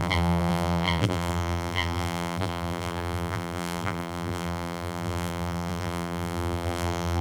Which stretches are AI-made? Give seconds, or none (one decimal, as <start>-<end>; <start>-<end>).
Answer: 0.0-7.2